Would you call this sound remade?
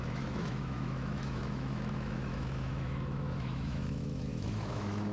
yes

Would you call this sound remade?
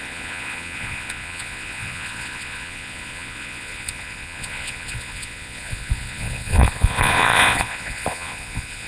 yes